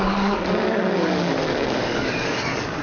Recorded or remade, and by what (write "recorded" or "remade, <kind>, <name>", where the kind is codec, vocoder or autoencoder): remade, codec, DAC